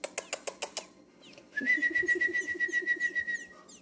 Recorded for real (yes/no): yes